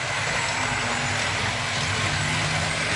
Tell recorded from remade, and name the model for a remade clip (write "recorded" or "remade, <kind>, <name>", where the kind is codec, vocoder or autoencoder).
recorded